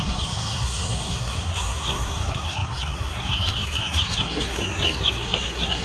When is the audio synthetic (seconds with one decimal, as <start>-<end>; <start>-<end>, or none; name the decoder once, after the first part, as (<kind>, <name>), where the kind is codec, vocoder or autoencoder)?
0.0-5.8 (codec, SNAC)